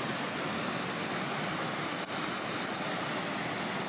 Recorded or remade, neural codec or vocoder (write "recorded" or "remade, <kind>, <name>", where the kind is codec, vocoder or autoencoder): recorded